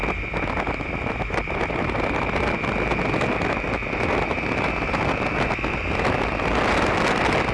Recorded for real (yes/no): yes